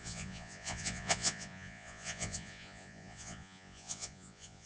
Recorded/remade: remade